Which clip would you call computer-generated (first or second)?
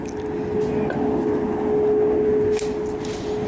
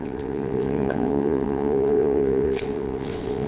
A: second